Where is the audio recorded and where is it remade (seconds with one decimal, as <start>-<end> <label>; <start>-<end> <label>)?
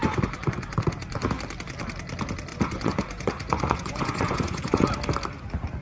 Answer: 0.0-1.3 remade; 1.3-2.5 recorded; 2.5-4.9 remade; 4.9-5.8 recorded